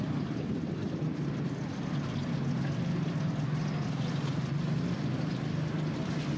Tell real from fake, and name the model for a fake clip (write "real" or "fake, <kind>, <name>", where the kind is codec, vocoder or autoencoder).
real